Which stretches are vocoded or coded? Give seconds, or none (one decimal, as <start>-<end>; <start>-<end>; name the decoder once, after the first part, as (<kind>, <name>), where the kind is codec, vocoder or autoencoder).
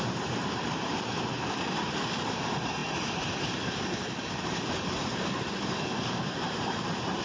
0.0-7.2 (vocoder, BigVGAN v2)